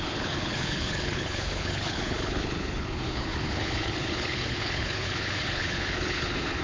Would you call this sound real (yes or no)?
no